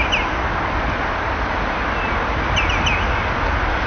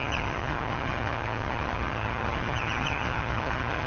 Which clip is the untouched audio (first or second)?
first